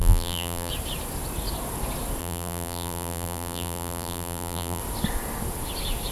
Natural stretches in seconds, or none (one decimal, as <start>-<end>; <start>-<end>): 0.7-2.2; 4.8-6.1